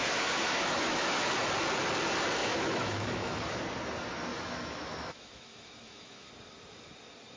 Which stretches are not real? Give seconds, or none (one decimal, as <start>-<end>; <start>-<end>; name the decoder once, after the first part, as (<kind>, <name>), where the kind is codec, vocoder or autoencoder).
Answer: 0.0-1.3 (autoencoder, DAC-VAE); 2.4-3.6; 4.3-6.3